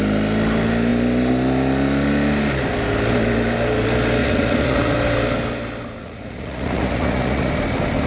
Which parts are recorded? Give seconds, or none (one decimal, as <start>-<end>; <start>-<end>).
0.0-4.2; 4.9-6.0; 7.5-8.1